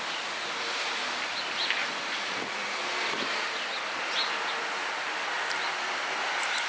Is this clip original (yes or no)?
yes